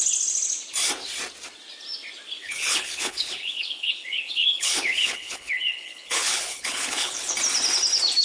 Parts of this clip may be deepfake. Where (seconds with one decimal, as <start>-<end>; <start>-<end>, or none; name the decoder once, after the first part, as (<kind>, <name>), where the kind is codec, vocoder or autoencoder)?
2.4-7.3 (codec, HILCodec)